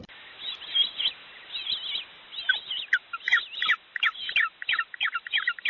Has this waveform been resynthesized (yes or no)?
no